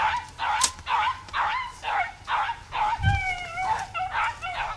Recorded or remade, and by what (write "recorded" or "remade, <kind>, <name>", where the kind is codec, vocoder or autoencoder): recorded